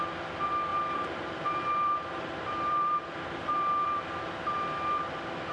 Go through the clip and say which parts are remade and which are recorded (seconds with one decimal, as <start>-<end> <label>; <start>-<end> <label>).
0.0-0.7 recorded; 0.7-4.0 remade; 4.0-5.5 recorded